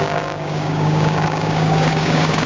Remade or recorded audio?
remade